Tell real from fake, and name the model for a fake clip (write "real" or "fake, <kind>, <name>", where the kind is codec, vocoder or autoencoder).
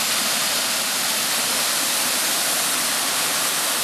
real